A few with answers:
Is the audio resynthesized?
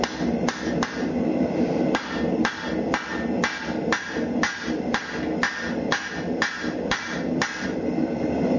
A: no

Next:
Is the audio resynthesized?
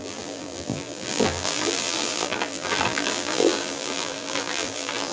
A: yes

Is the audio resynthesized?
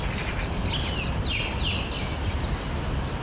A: no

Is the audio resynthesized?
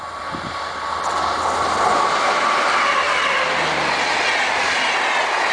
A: no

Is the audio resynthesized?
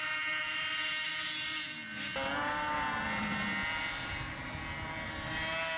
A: no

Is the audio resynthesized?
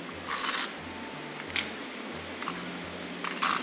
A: no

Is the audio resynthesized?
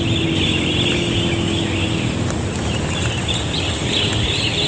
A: no